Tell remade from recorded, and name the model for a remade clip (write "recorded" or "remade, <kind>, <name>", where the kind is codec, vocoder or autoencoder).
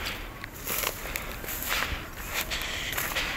recorded